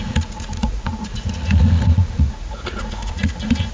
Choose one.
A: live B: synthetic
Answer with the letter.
B